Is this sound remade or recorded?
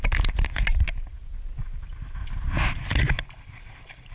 recorded